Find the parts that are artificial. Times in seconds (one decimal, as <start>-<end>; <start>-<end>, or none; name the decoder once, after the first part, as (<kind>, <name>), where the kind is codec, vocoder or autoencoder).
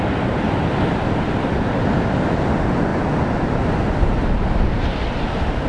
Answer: none